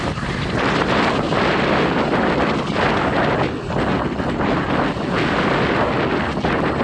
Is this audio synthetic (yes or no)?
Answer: no